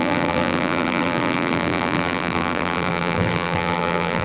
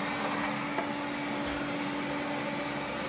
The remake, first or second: first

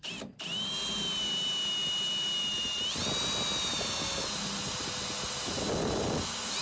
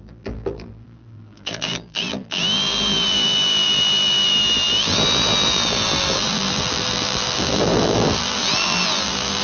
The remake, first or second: second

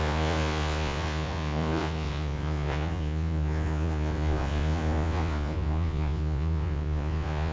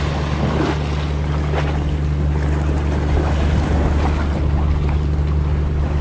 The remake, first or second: first